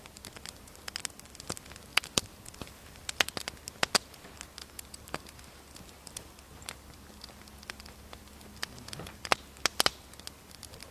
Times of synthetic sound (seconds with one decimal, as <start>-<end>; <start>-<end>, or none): 1.9-3.0; 4.6-9.3